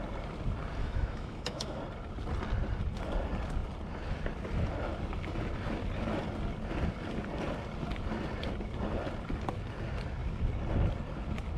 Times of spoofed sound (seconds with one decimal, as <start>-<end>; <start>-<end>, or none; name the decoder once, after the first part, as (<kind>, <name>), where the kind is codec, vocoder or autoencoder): 0.8-1.8 (autoencoder, DAC-VAE)